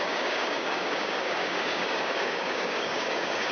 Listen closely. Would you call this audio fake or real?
fake